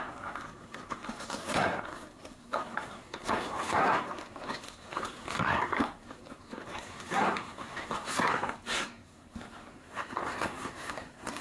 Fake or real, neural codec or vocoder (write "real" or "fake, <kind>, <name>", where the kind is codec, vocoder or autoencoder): fake, codec, SNAC